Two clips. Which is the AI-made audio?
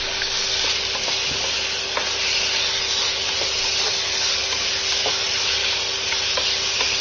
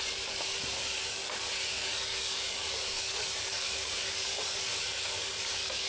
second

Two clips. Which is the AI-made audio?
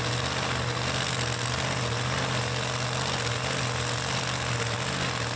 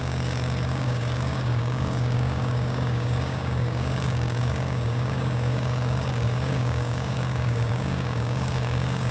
second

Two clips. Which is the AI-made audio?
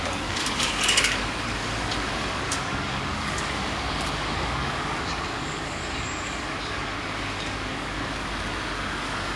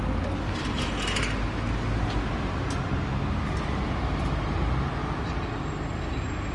first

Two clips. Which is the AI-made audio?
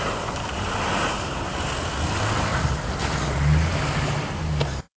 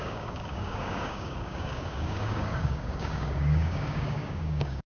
second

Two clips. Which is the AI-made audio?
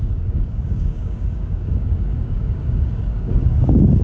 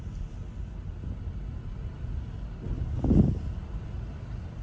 first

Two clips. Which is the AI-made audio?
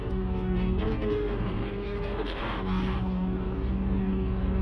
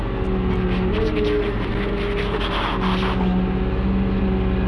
first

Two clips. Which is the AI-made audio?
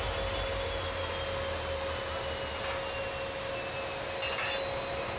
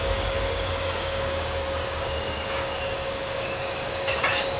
second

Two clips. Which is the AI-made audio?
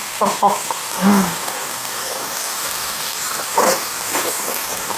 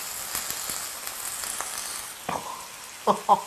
first